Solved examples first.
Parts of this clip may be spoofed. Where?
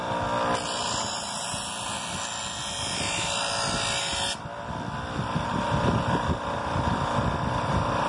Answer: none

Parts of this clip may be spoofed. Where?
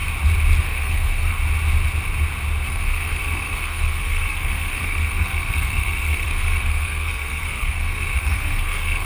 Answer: 0.6-1.4 (codec, SNAC); 2.7-9.0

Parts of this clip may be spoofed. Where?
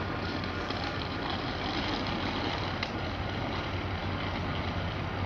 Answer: 0.0-4.0 (vocoder, BigVGAN v2)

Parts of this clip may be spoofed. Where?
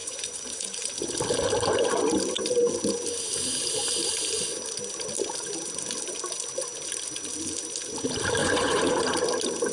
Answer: 0.0-0.9 (vocoder, Vocos); 8.4-9.0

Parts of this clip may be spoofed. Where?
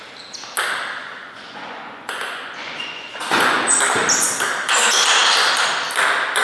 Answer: 1.0-3.8 (vocoder, Vocos)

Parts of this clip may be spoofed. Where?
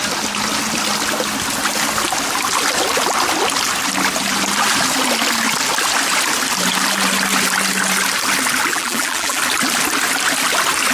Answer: 8.7-9.4 (vocoder, BigVGAN v2)